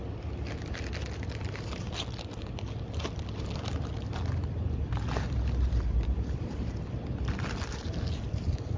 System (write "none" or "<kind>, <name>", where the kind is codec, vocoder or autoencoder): none